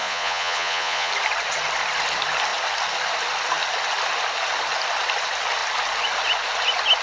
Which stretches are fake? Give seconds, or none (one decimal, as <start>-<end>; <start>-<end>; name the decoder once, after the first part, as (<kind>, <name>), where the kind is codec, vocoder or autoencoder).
0.0-1.1 (vocoder, Vocos)